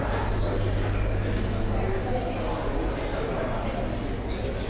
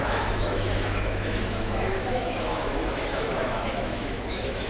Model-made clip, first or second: second